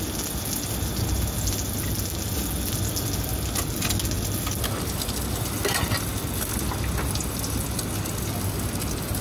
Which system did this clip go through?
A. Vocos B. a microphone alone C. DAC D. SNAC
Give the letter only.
B